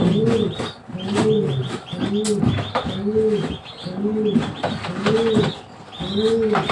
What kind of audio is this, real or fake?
real